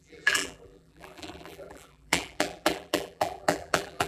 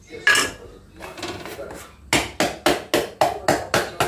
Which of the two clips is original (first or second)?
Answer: second